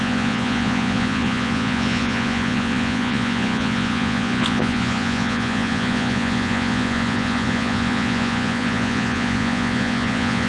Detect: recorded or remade remade